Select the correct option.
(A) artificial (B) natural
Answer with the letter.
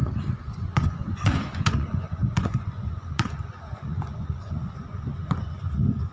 A